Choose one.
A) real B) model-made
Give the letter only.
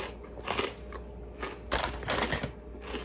A